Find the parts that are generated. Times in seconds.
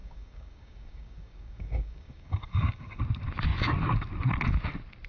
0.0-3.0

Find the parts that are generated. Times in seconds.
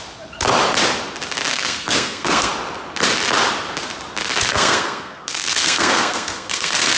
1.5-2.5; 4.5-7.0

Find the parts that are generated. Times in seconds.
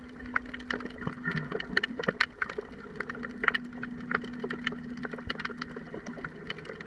none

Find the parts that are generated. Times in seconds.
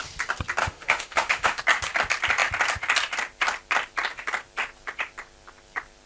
0.6-1.6